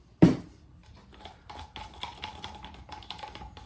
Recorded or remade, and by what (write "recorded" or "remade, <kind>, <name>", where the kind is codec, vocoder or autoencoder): recorded